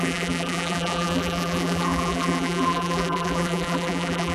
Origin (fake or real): fake